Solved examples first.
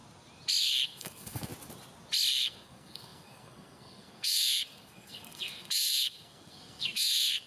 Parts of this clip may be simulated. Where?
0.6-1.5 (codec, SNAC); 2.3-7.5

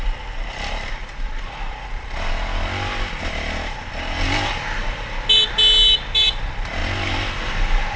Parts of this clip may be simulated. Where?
1.0-2.1 (vocoder, BigVGAN v2)

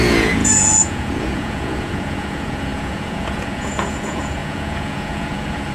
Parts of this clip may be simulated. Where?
0.0-5.7 (vocoder, Vocos)